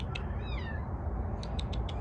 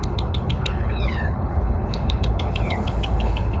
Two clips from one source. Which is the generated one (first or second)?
second